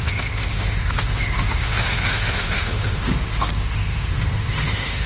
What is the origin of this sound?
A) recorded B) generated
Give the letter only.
B